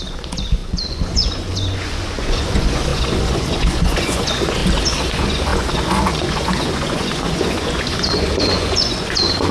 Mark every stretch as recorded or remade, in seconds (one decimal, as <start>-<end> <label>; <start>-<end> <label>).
0.0-4.6 remade; 4.6-5.1 recorded; 5.1-9.5 remade